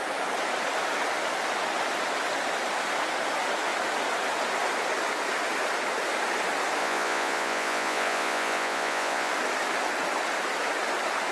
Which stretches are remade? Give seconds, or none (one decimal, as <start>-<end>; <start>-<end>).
6.8-9.3